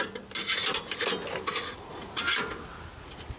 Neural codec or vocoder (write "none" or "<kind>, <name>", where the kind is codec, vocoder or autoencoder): none